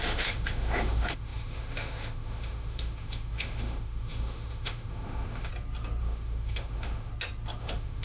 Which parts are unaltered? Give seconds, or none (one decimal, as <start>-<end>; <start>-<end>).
5.5-6.0; 7.1-7.6